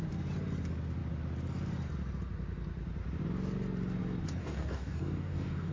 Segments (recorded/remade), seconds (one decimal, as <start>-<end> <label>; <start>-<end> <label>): 0.0-4.4 recorded; 4.4-5.7 remade